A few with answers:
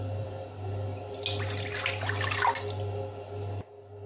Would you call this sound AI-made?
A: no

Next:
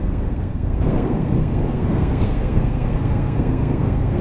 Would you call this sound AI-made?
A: yes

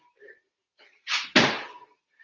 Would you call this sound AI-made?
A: no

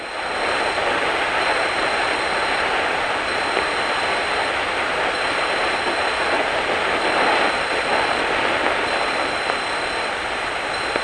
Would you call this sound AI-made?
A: no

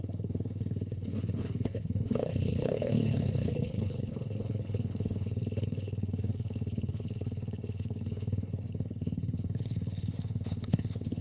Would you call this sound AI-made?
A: yes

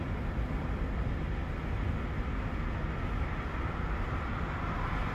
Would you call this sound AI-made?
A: no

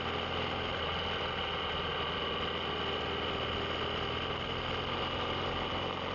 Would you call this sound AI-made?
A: no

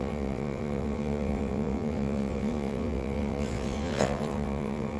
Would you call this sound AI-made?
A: yes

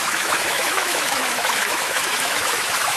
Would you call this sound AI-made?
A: yes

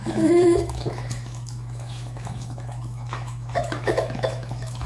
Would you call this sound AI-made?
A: yes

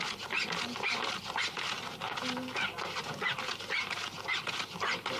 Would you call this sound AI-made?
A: no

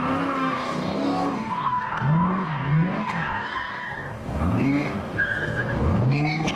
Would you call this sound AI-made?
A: yes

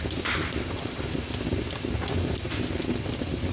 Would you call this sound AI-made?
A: no